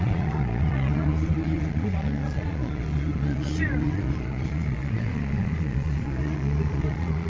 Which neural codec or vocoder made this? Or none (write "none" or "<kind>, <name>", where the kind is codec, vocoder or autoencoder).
vocoder, Vocos